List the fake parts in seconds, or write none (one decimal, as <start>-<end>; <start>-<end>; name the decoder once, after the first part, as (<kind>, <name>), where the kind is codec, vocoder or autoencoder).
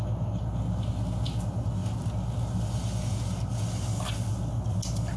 none